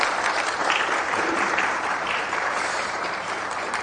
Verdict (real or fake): fake